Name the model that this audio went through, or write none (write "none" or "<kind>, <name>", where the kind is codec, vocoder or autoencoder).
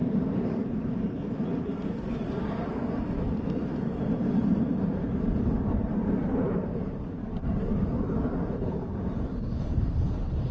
vocoder, BigVGAN v2